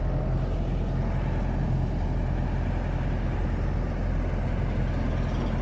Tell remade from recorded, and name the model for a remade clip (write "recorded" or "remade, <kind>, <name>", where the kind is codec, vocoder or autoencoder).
recorded